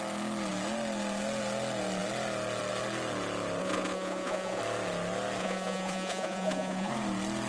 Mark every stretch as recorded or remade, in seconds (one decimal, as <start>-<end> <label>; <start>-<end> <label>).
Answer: 0.0-3.6 recorded; 3.6-4.6 remade; 4.6-5.4 recorded; 5.4-6.9 remade; 6.9-7.5 recorded